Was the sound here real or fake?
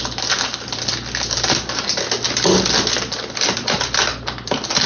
real